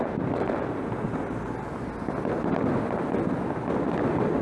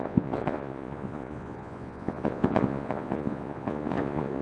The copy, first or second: second